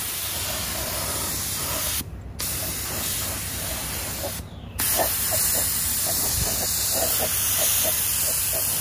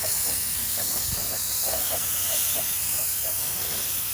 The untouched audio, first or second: first